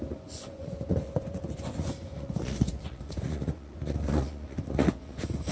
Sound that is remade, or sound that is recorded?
remade